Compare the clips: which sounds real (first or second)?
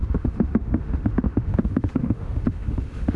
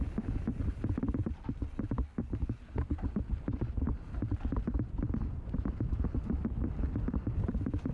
second